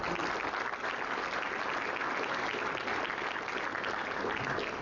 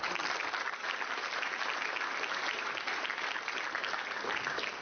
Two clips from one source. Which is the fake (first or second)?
second